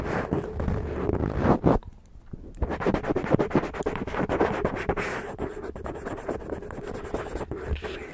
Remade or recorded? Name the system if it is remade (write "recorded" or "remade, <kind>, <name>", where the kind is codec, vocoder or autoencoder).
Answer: recorded